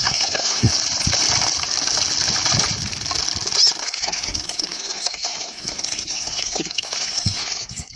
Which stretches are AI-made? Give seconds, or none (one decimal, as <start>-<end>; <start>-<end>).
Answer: 0.0-0.7; 3.8-8.0